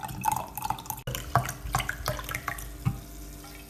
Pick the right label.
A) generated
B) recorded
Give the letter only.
B